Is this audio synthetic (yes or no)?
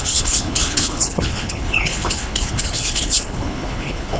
yes